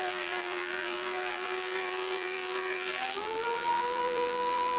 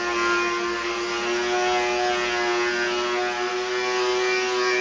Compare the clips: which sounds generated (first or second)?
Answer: first